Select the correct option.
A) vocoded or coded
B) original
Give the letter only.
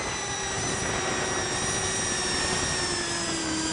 B